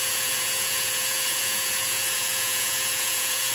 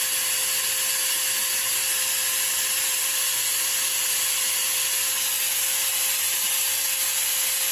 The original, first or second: second